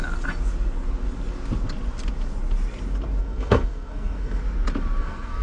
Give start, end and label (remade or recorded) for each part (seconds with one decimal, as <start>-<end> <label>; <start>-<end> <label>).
0.0-3.2 recorded; 3.2-4.4 remade; 4.4-5.0 recorded; 5.0-5.4 remade